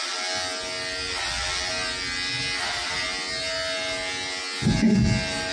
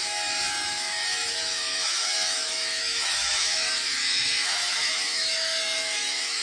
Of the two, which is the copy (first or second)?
second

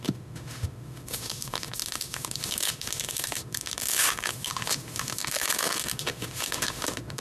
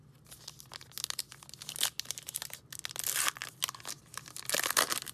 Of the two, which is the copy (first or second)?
first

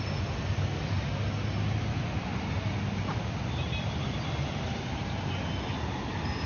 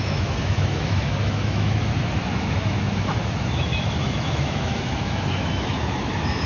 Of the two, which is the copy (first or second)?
second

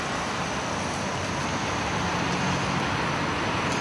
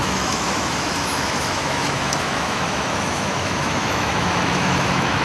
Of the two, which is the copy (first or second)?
second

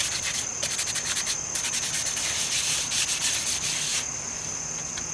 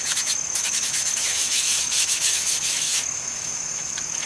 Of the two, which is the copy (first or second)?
second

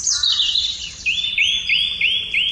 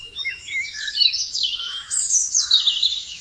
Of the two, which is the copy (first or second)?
second